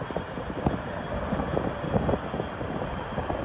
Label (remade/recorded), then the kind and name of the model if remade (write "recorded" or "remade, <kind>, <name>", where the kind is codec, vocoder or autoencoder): recorded